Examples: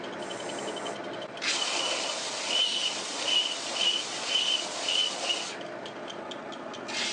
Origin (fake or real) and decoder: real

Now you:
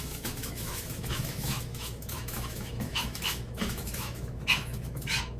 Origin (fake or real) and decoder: fake, autoencoder, DAC-VAE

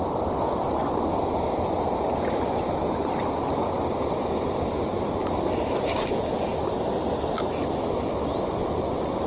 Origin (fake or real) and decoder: real